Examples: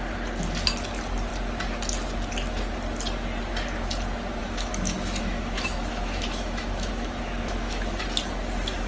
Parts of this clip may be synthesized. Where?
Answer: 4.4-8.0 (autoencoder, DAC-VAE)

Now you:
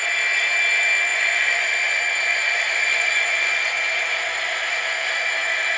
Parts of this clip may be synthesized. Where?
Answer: 1.1-1.7 (vocoder, Vocos); 2.3-3.6

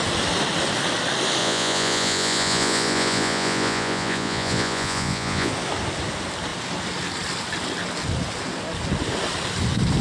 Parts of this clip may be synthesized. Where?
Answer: 1.4-5.5 (vocoder, Vocos)

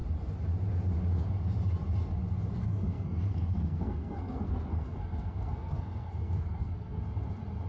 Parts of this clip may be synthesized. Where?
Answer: 2.6-7.0 (codec, SNAC)

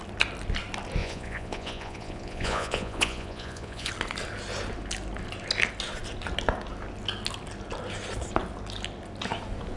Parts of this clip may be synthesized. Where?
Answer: 1.0-3.9 (vocoder, Vocos)